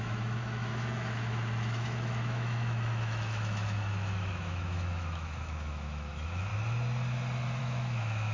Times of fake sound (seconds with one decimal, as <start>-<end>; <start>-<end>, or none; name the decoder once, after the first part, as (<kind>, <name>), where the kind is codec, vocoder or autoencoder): 0.0-6.5 (autoencoder, DAC-VAE); 7.6-8.3